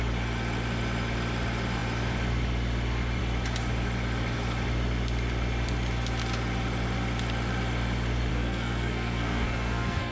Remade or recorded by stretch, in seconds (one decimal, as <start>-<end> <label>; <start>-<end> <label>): 0.0-8.3 recorded; 8.3-10.1 remade